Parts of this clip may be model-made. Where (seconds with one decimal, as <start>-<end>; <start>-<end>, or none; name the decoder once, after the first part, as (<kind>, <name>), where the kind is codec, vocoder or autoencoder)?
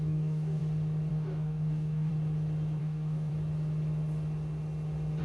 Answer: 0.0-0.6 (codec, DAC); 1.1-2.1; 2.8-3.3